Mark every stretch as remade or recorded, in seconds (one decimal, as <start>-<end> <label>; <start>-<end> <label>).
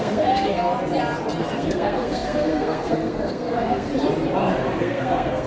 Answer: 0.0-0.7 remade; 0.7-1.4 recorded; 1.4-3.9 remade; 3.9-4.8 recorded; 4.8-5.5 remade